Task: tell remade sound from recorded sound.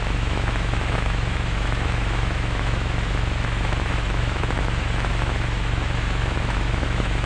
remade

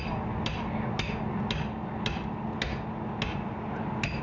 recorded